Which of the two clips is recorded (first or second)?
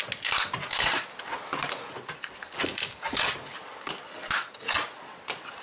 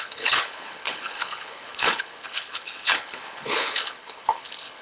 first